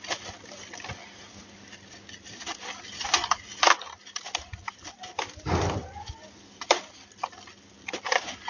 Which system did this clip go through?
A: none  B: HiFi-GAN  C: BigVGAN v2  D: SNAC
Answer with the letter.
A